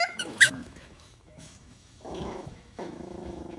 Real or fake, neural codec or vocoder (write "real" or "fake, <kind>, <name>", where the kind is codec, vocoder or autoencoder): fake, autoencoder, DAC-VAE